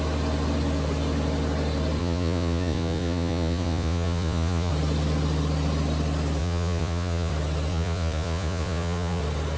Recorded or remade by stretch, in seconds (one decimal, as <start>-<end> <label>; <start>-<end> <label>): 0.0-2.0 recorded; 2.0-4.7 remade; 4.7-6.4 recorded; 6.4-7.3 remade; 7.3-7.7 recorded; 7.7-9.2 remade; 9.2-9.6 recorded